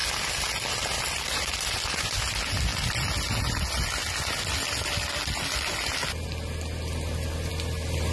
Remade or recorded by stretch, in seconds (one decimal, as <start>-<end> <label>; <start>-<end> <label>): 0.0-8.1 recorded